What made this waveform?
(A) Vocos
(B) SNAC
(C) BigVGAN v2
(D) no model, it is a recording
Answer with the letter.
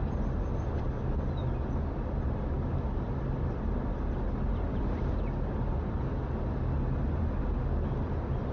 D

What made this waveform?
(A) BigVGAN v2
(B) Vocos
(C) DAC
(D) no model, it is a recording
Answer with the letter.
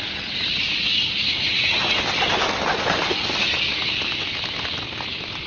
D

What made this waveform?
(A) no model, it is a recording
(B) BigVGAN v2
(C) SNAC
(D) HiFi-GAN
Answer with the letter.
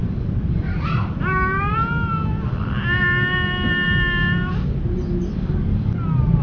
A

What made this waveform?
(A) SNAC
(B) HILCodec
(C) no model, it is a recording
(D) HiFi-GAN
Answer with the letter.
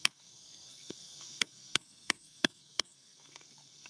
A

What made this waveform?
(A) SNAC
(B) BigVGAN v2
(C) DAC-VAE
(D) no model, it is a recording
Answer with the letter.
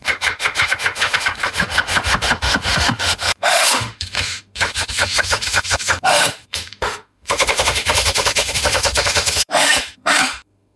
C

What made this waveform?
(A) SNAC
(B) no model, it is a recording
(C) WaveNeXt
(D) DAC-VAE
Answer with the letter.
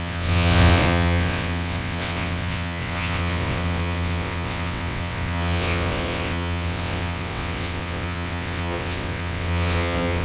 C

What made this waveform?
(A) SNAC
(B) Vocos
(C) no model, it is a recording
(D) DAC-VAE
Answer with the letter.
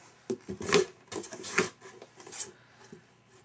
C